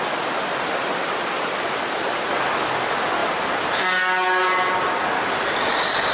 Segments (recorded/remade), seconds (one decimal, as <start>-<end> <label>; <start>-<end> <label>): 0.0-6.1 recorded